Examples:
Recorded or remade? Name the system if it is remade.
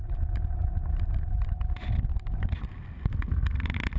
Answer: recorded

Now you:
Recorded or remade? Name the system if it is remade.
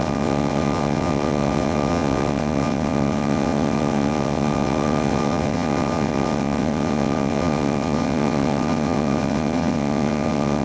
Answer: remade, vocoder, WaveNeXt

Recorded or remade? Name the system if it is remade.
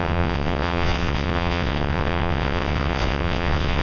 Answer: remade, vocoder, WaveNeXt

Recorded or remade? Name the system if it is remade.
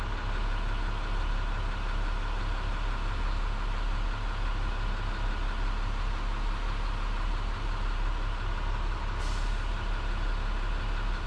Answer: recorded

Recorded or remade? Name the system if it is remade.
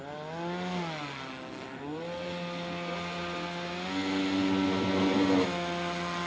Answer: recorded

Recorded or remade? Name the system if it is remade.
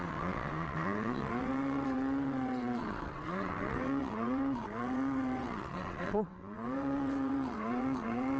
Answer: remade, vocoder, WaveNeXt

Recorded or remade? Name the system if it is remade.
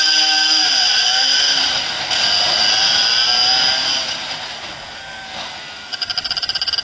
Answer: recorded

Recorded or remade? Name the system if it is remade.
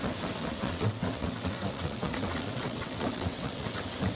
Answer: remade, vocoder, WaveNeXt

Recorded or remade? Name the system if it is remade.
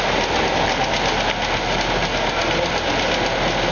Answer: recorded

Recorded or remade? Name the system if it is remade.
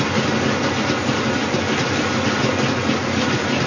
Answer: recorded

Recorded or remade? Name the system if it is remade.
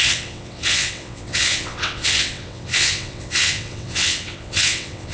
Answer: remade, vocoder, WaveNeXt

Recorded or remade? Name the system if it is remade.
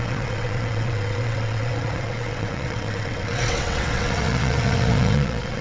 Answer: remade, vocoder, WaveNeXt